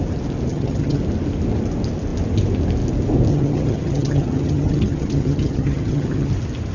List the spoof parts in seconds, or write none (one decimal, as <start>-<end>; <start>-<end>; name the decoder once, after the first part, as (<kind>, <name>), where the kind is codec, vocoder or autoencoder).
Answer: 0.5-1.0 (vocoder, HiFi-GAN); 3.3-6.3